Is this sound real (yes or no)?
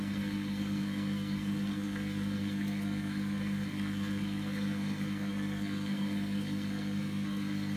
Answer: no